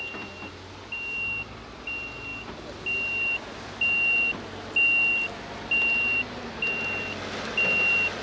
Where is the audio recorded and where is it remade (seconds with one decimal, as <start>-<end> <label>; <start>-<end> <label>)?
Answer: 0.0-8.2 recorded